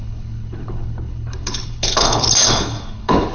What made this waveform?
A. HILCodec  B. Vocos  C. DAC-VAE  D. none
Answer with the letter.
A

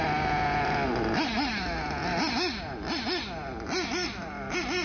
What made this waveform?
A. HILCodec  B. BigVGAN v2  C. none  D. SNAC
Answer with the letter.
C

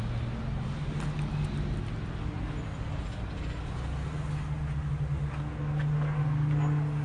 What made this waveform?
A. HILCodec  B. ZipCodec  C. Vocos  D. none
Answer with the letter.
D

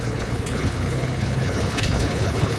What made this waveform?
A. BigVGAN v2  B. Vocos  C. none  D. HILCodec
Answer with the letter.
D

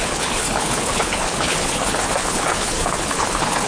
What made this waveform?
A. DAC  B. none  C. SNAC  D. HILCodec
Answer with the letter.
D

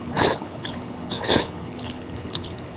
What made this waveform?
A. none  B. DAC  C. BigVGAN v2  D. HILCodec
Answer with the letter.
D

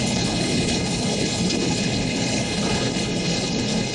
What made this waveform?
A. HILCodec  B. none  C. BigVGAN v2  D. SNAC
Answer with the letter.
A